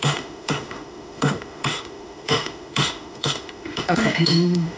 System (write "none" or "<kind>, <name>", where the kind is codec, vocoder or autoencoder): autoencoder, DAC-VAE